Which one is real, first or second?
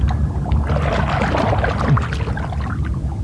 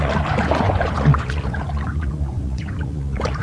first